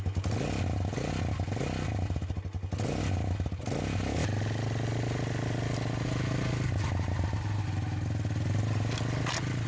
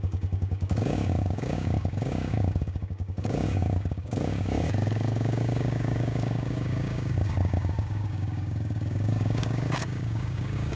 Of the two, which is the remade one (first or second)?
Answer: second